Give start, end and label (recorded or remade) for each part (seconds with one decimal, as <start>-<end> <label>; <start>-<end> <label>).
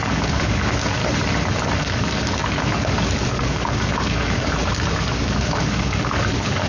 0.0-1.0 remade; 1.0-1.8 recorded; 1.8-6.7 remade